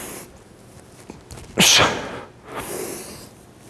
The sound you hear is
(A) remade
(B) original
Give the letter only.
B